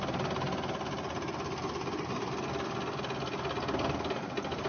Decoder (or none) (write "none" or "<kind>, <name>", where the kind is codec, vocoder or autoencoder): none